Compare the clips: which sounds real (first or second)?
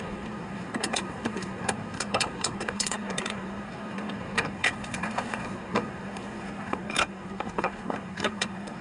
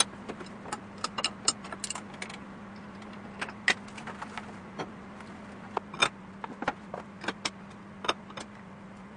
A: second